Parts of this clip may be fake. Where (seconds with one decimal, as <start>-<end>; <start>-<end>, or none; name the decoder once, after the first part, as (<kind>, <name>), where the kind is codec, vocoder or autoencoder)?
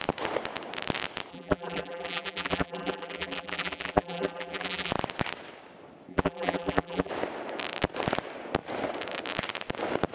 1.3-4.9 (vocoder, BigVGAN v2); 6.1-7.1